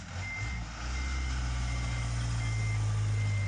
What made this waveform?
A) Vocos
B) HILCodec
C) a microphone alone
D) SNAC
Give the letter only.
C